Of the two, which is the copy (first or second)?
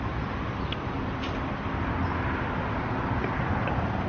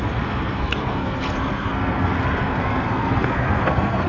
second